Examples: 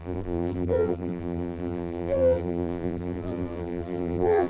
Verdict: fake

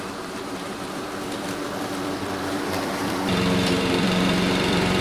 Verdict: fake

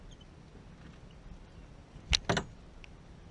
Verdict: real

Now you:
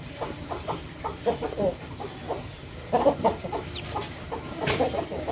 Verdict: fake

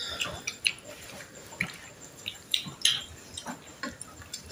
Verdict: real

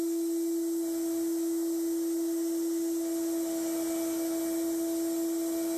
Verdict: real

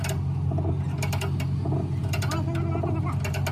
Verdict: real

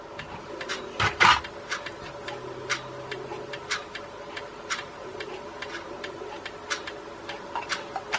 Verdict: real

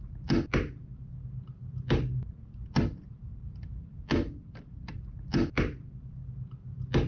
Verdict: real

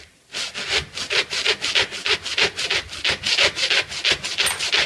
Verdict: real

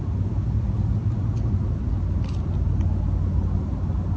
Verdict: real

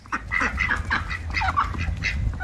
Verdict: real